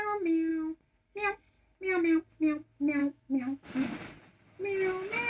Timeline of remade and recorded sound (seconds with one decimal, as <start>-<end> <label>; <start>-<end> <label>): 0.0-3.0 recorded; 3.0-3.9 remade; 3.9-5.3 recorded